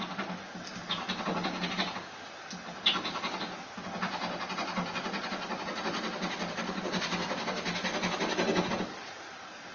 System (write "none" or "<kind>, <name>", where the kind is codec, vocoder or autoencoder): none